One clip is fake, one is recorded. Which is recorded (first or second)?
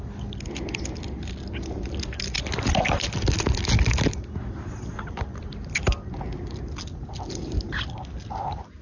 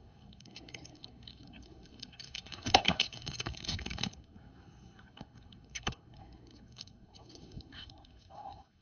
first